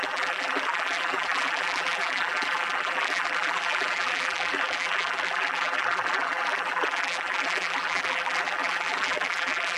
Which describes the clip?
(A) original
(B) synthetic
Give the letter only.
B